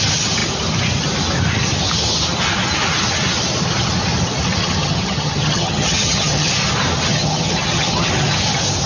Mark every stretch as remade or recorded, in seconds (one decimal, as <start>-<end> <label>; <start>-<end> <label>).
0.0-4.6 recorded; 4.6-6.5 remade; 6.5-7.1 recorded; 7.1-8.1 remade; 8.1-8.9 recorded